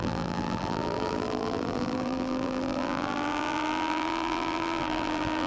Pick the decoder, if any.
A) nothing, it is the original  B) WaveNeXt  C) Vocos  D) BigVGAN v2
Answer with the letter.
D